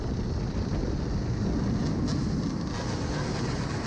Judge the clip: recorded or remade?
recorded